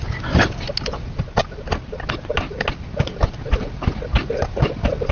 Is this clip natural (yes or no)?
yes